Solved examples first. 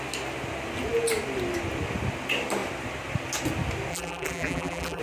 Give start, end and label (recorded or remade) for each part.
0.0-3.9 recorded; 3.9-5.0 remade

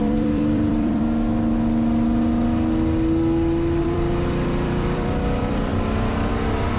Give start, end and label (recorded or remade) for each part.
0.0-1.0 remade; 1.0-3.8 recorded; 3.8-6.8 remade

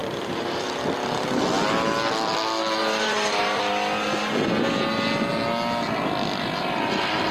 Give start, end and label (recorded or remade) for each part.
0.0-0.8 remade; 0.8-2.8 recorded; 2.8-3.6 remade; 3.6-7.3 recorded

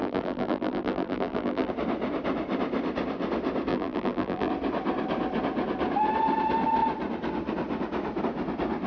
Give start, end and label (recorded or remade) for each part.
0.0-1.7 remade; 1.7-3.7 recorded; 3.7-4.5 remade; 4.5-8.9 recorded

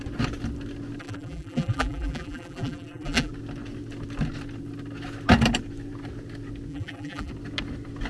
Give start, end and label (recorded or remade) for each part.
0.0-1.0 recorded; 1.0-3.3 remade; 3.3-6.7 recorded; 6.7-7.3 remade; 7.3-8.1 recorded